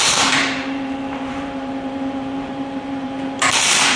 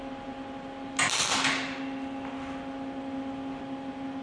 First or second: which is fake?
first